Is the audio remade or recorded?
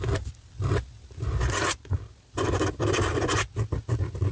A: recorded